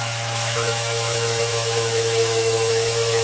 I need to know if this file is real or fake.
fake